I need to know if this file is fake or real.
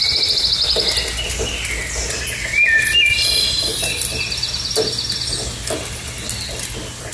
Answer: real